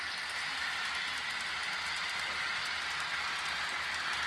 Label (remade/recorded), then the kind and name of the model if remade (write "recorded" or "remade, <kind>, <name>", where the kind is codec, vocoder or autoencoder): recorded